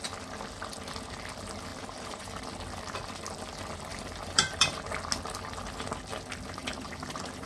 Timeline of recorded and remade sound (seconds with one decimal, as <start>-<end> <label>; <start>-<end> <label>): 0.0-1.7 recorded; 1.7-2.4 remade; 2.4-3.9 recorded; 3.9-4.8 remade; 4.8-6.6 recorded; 6.6-7.5 remade